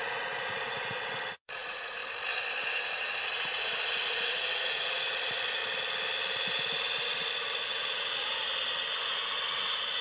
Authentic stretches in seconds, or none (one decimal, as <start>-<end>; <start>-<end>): 2.0-4.0; 5.6-7.0; 8.2-9.0